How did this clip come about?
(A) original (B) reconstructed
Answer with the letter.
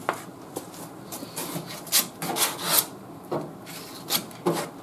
A